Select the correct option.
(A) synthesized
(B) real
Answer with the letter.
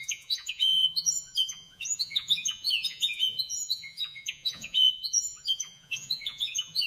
A